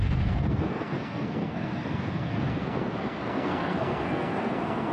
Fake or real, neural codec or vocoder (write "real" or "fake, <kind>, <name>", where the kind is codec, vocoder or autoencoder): fake, codec, SNAC